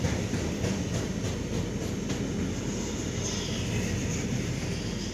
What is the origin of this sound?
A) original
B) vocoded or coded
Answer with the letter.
A